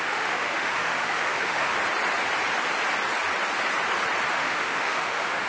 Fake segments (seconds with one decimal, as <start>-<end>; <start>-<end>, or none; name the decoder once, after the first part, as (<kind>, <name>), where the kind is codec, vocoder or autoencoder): 0.0-1.7 (autoencoder, DAC-VAE); 4.3-5.5